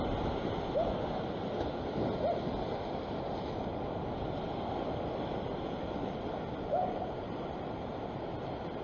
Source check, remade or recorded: recorded